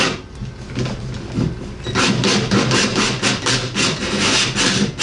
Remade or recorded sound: recorded